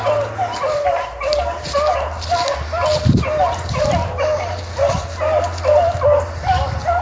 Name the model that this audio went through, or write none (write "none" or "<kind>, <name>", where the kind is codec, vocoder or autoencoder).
none